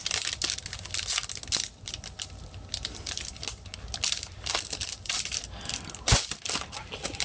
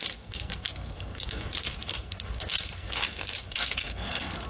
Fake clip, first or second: second